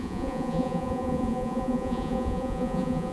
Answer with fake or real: fake